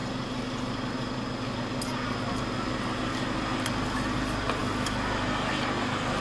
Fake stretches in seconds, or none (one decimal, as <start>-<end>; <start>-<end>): none